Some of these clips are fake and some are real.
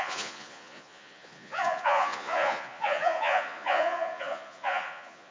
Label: fake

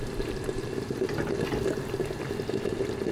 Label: real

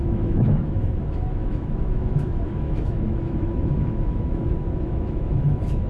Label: fake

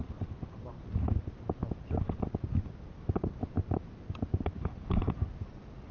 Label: real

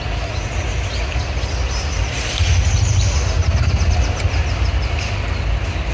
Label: real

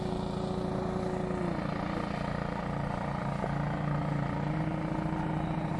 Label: real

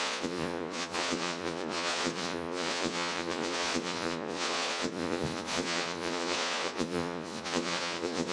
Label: fake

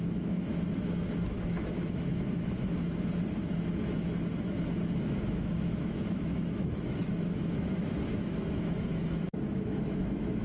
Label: fake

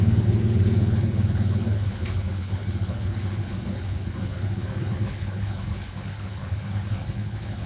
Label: fake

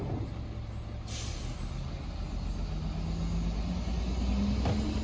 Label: real